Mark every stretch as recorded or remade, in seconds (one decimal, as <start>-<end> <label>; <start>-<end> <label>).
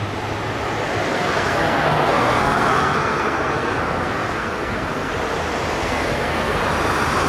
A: 0.0-1.1 recorded; 1.1-5.1 remade; 5.1-5.8 recorded; 5.8-6.6 remade; 6.6-7.3 recorded